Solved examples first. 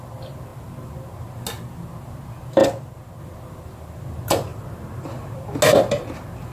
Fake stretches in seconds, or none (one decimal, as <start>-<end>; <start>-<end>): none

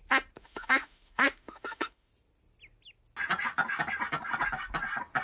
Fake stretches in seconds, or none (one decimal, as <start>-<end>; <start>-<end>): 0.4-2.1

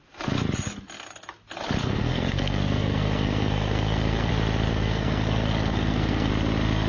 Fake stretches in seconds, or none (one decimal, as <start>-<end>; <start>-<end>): 1.8-4.3; 4.7-6.3

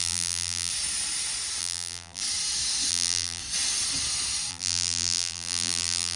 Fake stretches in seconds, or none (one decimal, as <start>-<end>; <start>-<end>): 0.0-0.7; 1.6-2.2; 2.9-3.4; 4.5-6.2

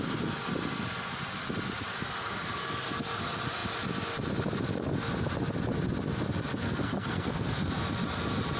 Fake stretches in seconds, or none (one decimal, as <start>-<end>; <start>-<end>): 6.6-7.7

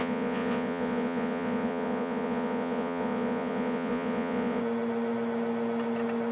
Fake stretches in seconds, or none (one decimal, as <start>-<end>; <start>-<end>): 0.0-4.6